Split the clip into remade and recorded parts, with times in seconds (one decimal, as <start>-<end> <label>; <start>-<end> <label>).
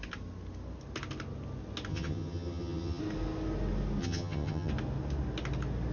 0.0-1.9 recorded; 1.9-3.0 remade; 3.0-4.0 recorded; 4.0-4.7 remade; 4.7-5.9 recorded